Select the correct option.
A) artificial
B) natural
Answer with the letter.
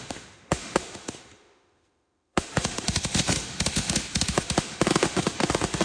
A